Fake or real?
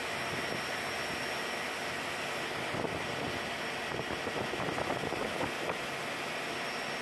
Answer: real